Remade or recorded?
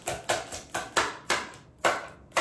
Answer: recorded